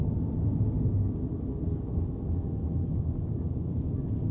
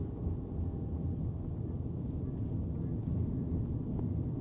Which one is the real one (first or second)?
first